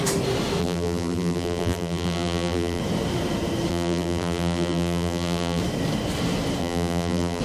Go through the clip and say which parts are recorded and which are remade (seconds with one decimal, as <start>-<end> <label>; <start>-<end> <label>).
0.0-0.6 recorded; 0.6-2.8 remade; 2.8-3.7 recorded; 3.7-5.6 remade; 5.6-6.6 recorded; 6.6-7.4 remade

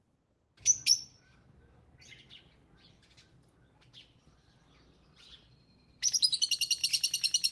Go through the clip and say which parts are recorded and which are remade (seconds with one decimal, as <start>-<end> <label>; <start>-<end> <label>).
0.0-7.5 recorded